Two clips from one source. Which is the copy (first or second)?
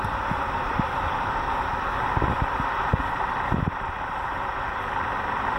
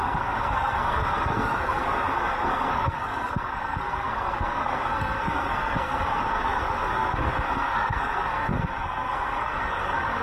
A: second